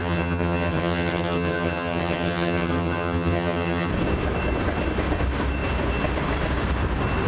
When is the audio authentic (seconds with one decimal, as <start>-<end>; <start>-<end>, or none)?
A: 3.9-7.3